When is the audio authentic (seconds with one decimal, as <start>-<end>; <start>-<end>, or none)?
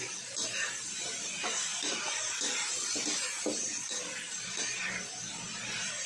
0.0-6.1